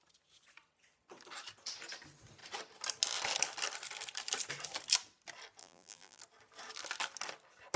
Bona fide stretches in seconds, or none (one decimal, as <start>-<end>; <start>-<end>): 0.0-5.6; 6.2-7.8